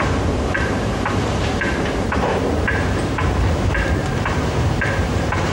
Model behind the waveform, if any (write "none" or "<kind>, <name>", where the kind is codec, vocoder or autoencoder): vocoder, BigVGAN v2